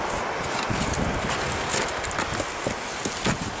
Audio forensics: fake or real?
real